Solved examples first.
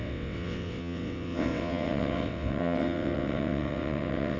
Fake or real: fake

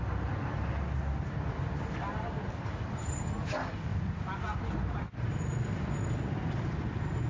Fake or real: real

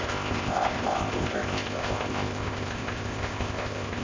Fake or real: fake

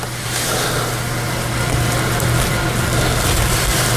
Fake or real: real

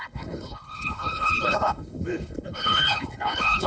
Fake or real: fake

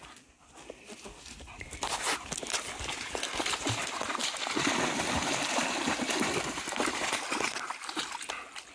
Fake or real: real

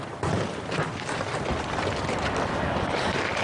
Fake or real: real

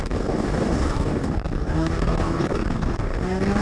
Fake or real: fake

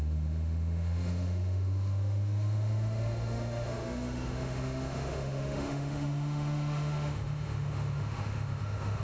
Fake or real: fake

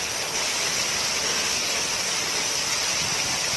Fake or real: real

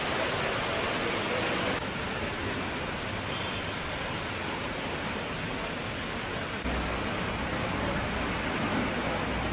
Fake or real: real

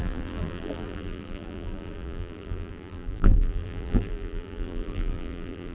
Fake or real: fake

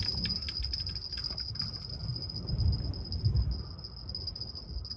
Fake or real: real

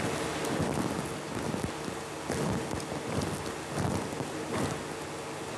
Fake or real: real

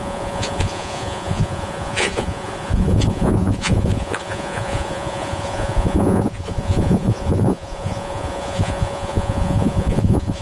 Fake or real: fake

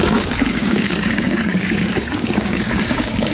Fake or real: fake